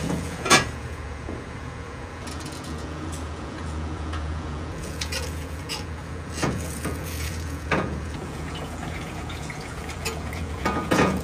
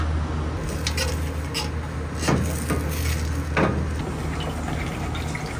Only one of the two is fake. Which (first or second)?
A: first